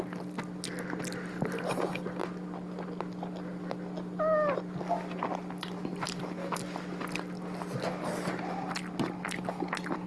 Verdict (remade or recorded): recorded